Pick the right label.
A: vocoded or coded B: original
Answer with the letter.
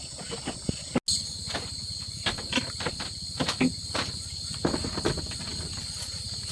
B